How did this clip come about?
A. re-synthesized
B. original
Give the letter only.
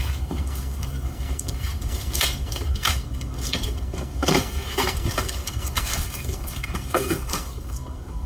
A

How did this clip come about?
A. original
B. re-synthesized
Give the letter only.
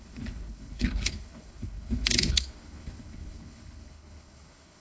B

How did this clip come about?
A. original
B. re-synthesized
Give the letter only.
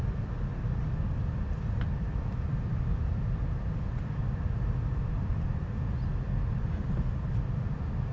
A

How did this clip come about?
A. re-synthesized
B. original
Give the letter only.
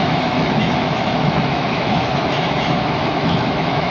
A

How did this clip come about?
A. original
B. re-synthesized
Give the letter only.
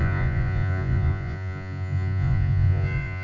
B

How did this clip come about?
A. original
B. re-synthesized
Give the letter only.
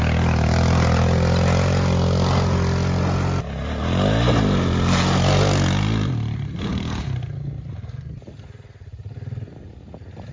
A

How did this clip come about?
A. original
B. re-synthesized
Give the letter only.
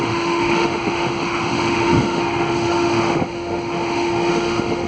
B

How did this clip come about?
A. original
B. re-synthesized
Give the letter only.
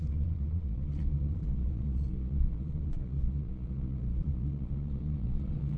B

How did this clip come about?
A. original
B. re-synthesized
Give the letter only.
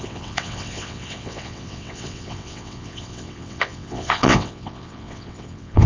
B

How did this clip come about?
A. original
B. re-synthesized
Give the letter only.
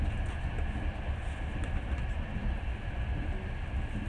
A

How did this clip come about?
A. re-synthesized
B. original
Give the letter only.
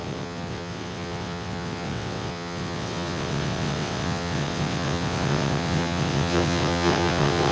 A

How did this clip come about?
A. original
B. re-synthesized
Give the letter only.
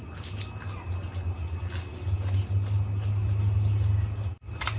A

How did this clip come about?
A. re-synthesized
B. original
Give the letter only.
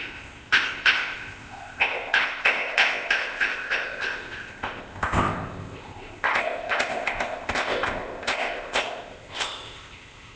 A